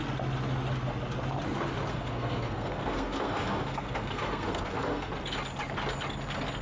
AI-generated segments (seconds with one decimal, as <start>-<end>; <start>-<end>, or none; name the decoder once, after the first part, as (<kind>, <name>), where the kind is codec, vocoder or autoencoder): 1.9-5.1 (codec, SNAC)